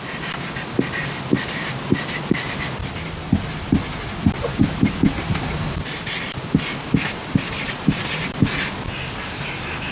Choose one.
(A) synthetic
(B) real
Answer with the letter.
B